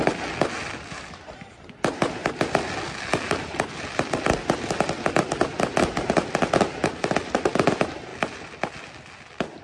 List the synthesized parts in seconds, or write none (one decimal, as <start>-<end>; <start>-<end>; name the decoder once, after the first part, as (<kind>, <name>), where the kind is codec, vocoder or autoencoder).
none